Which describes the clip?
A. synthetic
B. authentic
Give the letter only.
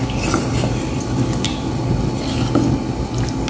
B